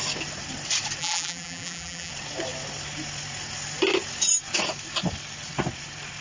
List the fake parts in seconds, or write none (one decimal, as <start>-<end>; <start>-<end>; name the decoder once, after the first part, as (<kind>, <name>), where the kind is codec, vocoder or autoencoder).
1.0-2.1 (vocoder, BigVGAN v2)